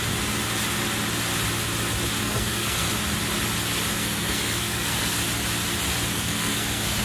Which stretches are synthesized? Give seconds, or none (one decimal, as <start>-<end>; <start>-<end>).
2.2-2.9; 3.9-5.2; 6.1-7.0